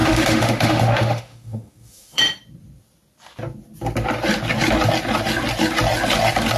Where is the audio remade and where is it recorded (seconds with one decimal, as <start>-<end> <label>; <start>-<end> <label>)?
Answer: 0.0-2.2 remade; 2.2-6.6 recorded